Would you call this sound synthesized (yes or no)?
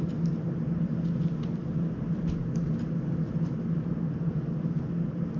no